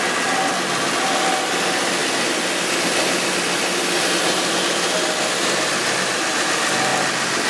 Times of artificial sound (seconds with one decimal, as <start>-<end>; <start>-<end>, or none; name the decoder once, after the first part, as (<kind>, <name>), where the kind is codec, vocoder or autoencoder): none